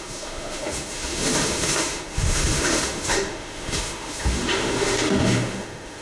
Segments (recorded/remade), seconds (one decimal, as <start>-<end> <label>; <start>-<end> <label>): 0.0-6.0 remade